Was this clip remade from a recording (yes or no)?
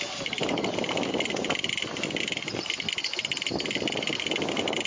no